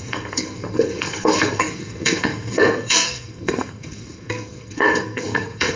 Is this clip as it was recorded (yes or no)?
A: no